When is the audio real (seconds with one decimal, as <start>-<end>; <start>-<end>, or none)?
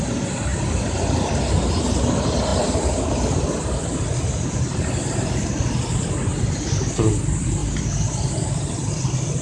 0.0-0.5; 1.5-7.6; 9.0-9.4